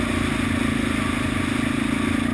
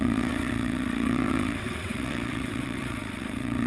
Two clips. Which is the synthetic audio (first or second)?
second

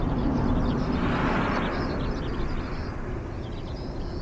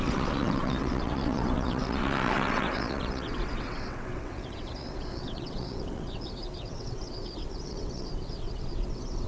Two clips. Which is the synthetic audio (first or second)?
second